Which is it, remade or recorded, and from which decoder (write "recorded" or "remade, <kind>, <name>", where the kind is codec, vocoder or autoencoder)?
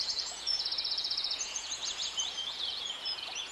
remade, vocoder, Vocos